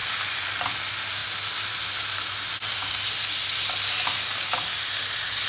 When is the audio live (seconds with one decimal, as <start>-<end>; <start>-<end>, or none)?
0.6-5.5